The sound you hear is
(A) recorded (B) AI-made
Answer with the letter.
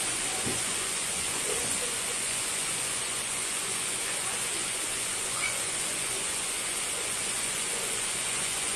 B